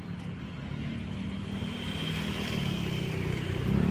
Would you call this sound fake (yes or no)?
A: no